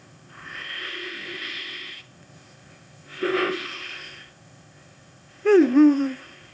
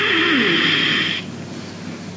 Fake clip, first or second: first